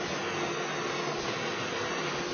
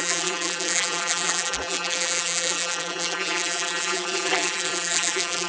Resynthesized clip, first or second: second